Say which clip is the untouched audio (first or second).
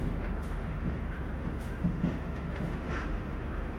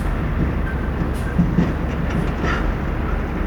second